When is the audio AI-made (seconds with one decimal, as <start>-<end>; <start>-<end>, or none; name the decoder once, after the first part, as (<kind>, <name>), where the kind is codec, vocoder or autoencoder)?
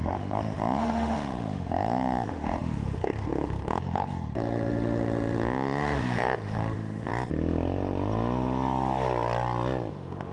0.0-7.1 (autoencoder, DAC-VAE); 9.9-10.3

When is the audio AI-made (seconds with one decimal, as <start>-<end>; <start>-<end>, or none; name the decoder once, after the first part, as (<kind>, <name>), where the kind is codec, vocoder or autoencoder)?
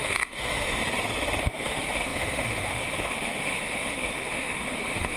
0.0-0.8 (autoencoder, DAC-VAE); 1.4-5.2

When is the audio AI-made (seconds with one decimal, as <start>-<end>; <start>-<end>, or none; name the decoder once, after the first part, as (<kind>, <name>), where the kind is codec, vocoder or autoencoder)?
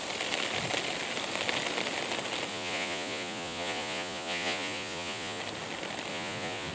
2.5-5.4 (vocoder, Vocos); 6.1-6.7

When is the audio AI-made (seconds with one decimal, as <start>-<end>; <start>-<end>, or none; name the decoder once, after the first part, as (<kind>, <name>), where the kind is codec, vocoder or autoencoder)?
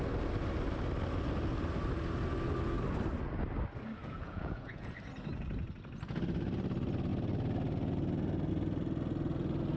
4.0-4.9 (vocoder, Vocos)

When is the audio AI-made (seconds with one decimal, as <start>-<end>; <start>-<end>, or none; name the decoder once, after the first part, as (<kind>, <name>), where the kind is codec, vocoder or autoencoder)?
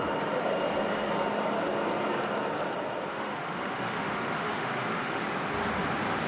3.1-5.2 (autoencoder, DAC-VAE)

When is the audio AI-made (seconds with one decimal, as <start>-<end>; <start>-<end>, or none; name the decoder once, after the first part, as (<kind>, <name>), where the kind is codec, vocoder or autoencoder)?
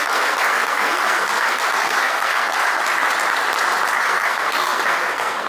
0.0-2.7 (codec, SNAC); 4.0-5.5